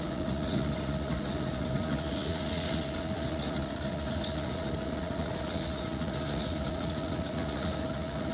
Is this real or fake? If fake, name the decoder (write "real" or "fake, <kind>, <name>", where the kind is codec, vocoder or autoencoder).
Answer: fake, vocoder, Vocos